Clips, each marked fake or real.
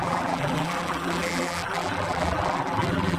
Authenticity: fake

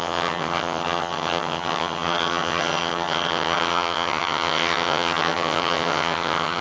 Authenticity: fake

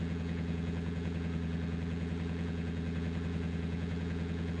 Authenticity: fake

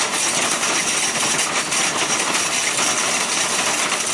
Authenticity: real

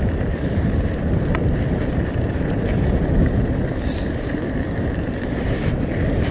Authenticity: fake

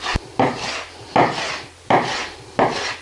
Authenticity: real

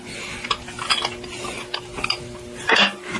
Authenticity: real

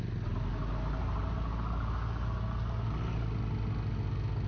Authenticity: real